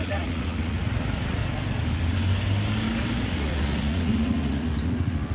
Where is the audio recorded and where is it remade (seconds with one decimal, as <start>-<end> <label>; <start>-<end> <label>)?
0.0-1.4 remade; 1.4-3.2 recorded; 3.2-5.3 remade